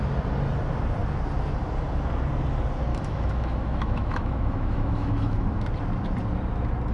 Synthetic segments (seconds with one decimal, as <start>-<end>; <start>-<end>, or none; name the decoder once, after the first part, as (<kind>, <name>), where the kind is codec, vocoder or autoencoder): 2.9-5.7 (autoencoder, DAC-VAE)